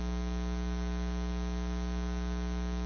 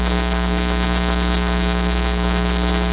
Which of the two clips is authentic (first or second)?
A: first